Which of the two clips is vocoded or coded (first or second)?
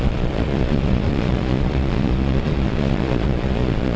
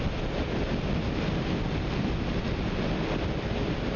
first